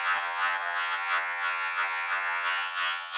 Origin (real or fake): fake